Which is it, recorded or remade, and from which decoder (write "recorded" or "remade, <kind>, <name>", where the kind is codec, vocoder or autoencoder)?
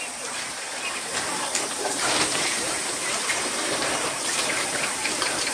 remade, vocoder, BigVGAN v2